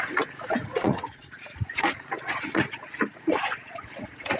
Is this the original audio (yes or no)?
no